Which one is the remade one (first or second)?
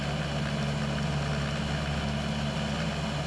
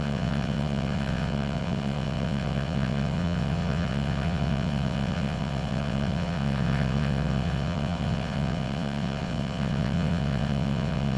second